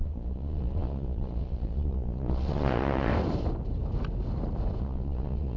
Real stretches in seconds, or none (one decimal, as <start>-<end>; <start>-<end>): 3.1-4.8